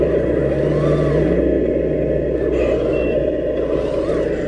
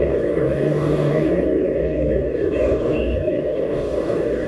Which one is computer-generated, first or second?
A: second